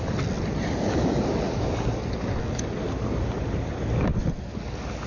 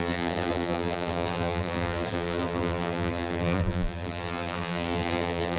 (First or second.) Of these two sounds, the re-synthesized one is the second